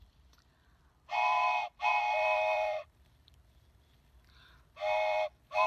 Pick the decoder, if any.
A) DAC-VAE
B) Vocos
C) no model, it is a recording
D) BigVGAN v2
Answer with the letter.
D